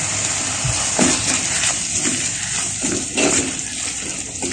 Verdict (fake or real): real